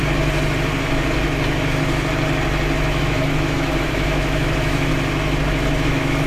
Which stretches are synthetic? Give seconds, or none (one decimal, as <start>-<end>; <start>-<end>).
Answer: 3.0-4.9; 5.5-6.3